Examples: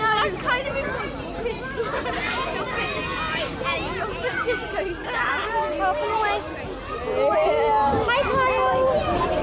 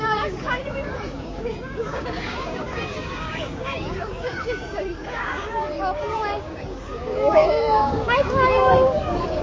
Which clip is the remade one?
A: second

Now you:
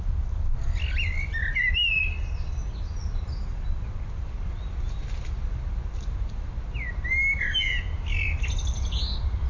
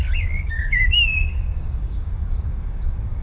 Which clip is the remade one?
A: second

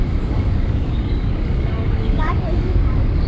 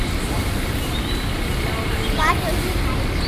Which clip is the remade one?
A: first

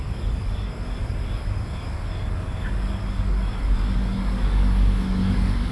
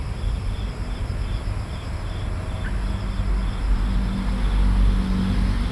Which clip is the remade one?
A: first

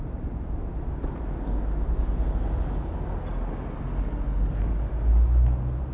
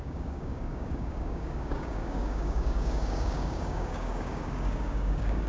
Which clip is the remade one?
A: second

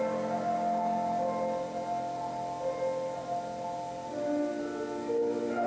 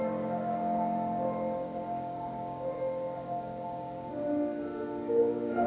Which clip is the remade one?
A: second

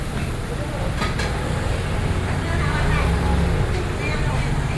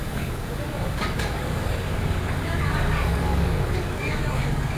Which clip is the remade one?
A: second